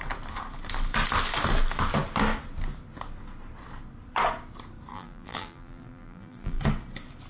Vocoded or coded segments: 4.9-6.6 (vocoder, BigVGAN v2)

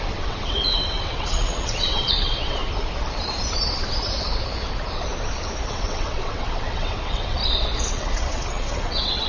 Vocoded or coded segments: 0.0-2.6 (vocoder, WaveNeXt); 5.7-7.4; 7.9-9.3

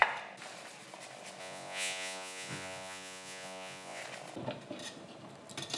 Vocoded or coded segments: 1.4-4.0 (vocoder, Vocos)

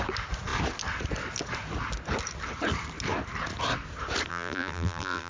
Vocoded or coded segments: 4.3-5.3 (vocoder, BigVGAN v2)

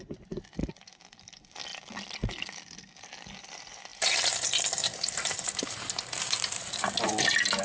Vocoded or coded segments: 3.9-6.9 (vocoder, BigVGAN v2)